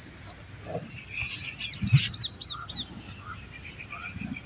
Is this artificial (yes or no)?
no